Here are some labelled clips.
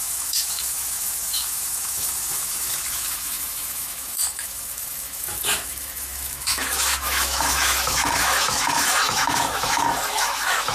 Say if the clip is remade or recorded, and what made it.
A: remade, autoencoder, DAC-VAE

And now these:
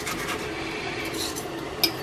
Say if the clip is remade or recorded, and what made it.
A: recorded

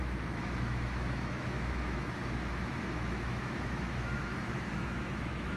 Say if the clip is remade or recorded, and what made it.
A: remade, autoencoder, DAC-VAE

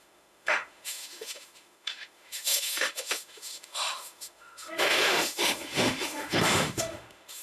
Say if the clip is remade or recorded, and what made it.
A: remade, autoencoder, DAC-VAE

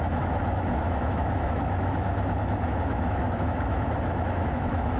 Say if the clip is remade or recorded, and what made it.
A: remade, autoencoder, DAC-VAE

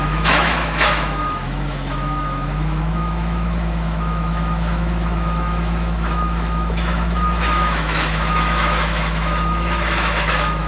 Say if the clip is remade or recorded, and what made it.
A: remade, autoencoder, DAC-VAE